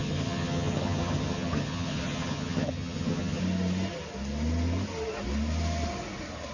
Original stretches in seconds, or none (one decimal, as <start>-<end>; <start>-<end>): 3.4-6.5